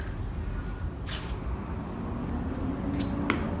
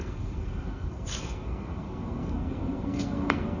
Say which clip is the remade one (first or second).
second